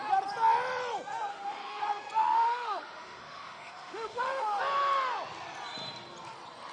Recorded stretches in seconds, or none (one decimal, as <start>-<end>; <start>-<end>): 0.0-1.3; 1.8-2.2; 4.6-6.7